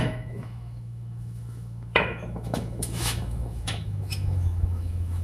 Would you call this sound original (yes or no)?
no